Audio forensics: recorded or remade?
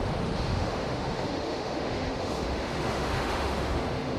remade